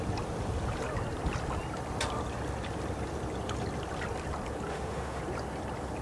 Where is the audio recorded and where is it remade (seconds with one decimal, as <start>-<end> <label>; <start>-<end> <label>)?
0.0-4.7 recorded; 4.7-5.2 remade; 5.2-6.0 recorded